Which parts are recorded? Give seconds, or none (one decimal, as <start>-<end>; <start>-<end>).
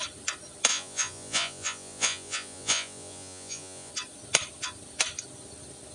0.0-0.7; 3.9-5.9